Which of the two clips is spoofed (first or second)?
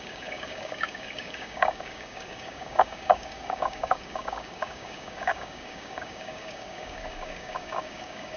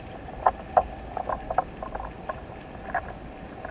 first